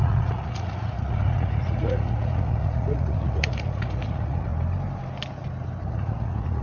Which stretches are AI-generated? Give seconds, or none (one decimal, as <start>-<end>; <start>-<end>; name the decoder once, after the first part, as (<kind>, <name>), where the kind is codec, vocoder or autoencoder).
0.0-4.5 (vocoder, Vocos); 5.9-6.6